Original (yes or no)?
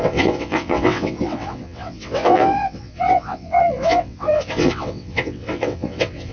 no